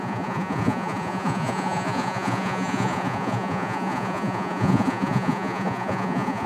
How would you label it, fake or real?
fake